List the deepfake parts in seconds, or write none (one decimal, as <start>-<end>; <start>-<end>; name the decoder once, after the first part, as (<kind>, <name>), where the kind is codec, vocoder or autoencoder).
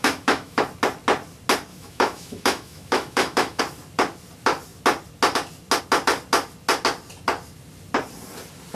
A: 0.0-0.6 (autoencoder, DAC-VAE); 1.7-3.6